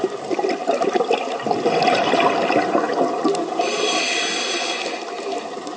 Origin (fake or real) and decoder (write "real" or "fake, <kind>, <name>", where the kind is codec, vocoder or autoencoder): real